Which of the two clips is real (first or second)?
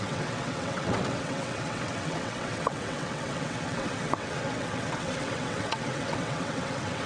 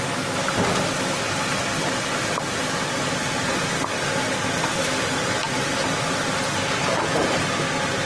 second